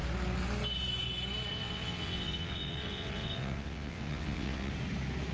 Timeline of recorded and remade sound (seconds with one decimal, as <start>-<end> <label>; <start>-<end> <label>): 0.0-1.5 recorded; 1.5-4.7 remade; 4.7-5.3 recorded